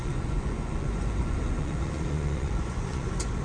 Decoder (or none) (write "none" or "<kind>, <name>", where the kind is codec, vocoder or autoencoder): vocoder, Vocos